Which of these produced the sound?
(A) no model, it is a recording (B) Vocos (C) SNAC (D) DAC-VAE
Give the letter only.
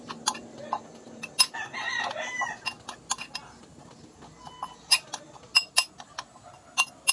A